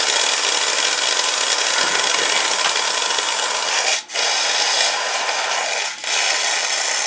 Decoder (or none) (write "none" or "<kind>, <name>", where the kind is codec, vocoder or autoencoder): none